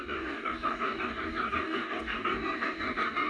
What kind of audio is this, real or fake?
fake